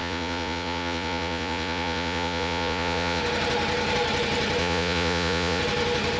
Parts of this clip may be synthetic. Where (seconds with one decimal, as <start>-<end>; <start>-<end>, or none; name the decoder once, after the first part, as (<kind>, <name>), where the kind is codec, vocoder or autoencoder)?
0.0-3.2 (vocoder, Vocos); 4.6-5.6